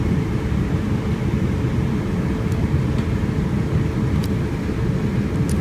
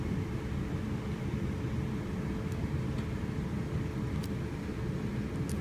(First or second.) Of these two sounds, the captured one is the second